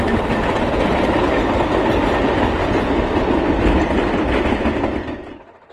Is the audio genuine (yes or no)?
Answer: yes